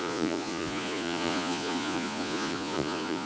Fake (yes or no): yes